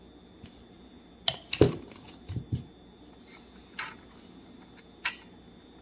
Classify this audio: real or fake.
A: real